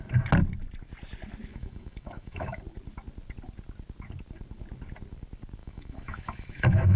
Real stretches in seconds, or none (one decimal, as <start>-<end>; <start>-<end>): 0.0-1.5; 2.6-5.6